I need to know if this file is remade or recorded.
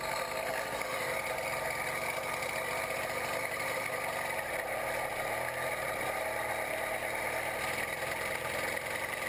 recorded